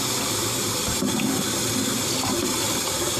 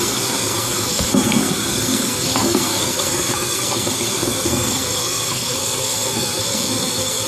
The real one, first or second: first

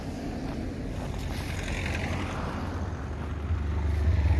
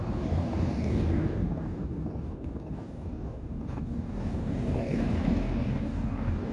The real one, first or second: first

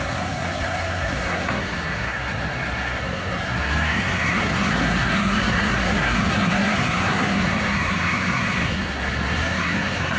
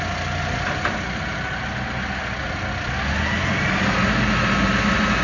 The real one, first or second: second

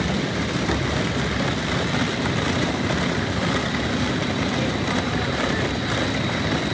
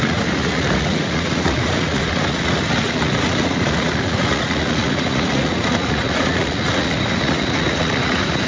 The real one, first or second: first